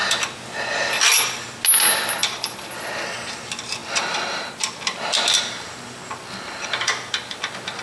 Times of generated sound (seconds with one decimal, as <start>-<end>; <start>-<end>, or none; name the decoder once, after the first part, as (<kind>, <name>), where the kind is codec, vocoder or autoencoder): 2.2-2.7 (vocoder, BigVGAN v2); 3.8-5.1